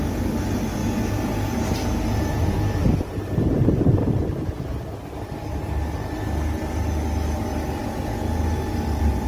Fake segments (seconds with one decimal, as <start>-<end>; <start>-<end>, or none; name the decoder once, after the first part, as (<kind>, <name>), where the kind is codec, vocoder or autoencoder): 7.8-8.3 (vocoder, Vocos)